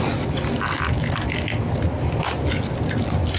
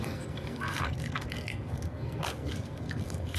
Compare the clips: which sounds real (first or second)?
first